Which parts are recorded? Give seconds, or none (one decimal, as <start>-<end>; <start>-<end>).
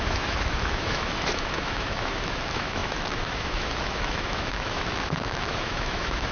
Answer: none